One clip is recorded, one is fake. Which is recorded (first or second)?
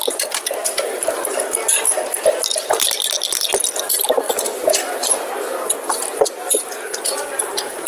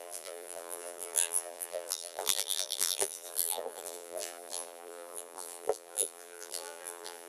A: first